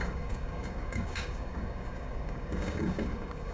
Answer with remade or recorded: remade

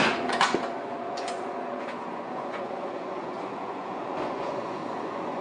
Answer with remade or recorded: remade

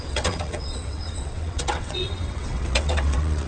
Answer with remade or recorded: remade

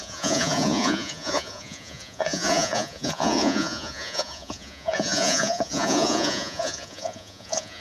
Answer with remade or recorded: remade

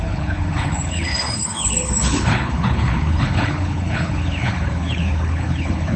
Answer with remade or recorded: remade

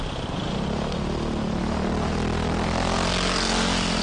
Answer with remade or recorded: recorded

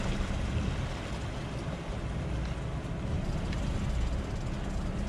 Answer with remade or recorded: recorded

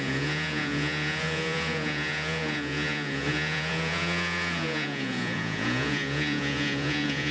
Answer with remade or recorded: remade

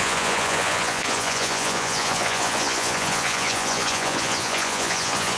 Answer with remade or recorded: remade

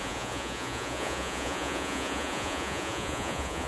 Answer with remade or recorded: remade